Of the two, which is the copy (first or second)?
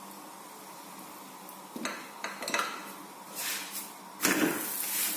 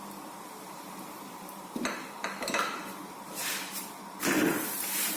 second